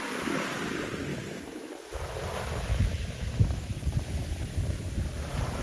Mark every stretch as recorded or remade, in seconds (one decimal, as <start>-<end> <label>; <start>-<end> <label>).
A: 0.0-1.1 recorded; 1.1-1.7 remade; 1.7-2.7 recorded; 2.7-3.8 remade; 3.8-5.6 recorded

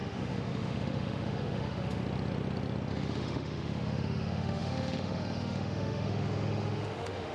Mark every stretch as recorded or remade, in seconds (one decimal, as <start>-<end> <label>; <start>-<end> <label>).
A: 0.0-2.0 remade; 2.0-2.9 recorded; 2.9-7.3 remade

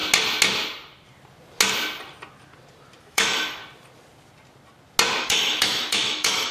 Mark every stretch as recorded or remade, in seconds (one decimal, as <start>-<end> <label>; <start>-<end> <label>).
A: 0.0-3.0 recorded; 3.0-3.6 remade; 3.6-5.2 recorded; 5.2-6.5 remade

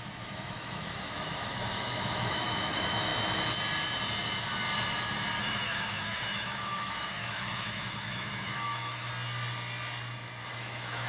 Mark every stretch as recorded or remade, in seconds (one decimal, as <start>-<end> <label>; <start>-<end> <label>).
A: 0.0-3.1 remade; 3.1-5.4 recorded; 5.4-9.1 remade; 9.1-10.6 recorded; 10.6-11.1 remade

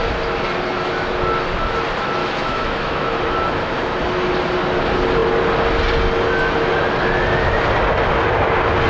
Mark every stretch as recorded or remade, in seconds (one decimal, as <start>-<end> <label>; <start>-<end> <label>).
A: 0.0-2.2 recorded; 2.2-3.2 remade; 3.2-8.9 recorded

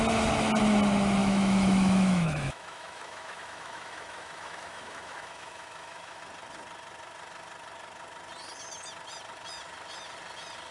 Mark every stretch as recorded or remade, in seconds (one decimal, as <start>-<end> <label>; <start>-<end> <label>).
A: 0.0-1.2 recorded; 1.2-6.2 remade; 6.2-10.7 recorded

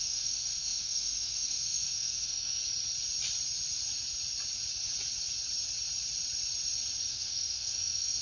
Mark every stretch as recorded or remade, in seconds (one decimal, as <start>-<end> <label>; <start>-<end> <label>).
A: 0.0-2.6 remade; 2.6-7.1 recorded; 7.1-8.2 remade

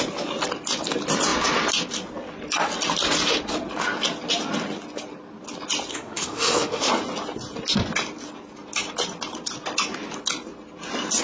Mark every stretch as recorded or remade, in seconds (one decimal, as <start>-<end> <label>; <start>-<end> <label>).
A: 0.0-5.9 recorded; 5.9-6.9 remade; 6.9-11.2 recorded